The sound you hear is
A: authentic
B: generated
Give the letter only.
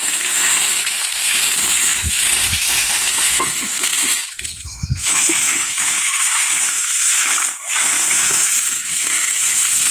B